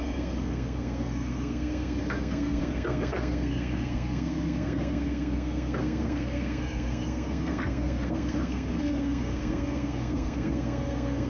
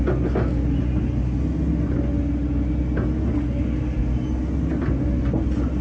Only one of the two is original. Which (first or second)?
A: second